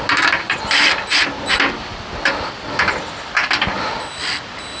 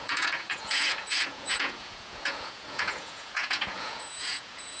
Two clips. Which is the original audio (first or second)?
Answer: first